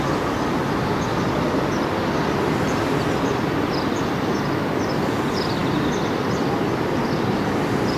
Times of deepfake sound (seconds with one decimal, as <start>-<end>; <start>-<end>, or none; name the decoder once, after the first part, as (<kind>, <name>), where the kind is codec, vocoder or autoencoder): none

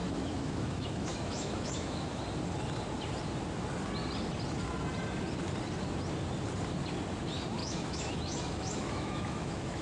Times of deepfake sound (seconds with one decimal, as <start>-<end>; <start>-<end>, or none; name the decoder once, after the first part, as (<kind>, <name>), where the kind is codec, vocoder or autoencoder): 0.0-2.2 (autoencoder, DAC-VAE); 7.6-9.8